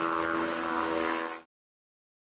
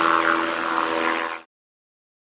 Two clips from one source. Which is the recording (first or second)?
second